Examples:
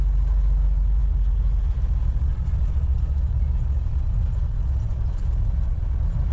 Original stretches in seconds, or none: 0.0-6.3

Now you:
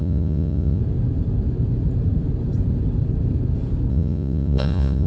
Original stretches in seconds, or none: 0.8-3.9

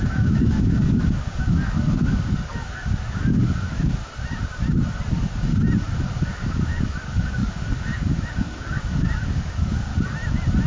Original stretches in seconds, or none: 4.0-5.1; 5.5-6.2; 9.9-10.7

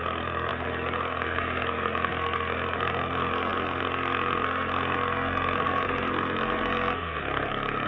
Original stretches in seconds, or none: none

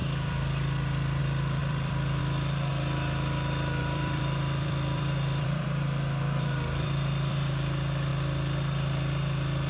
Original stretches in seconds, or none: 2.7-3.8; 8.1-9.7